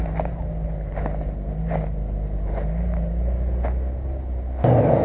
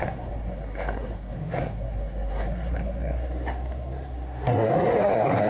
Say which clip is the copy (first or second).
second